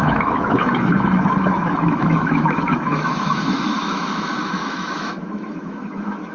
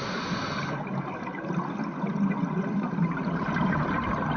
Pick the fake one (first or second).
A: first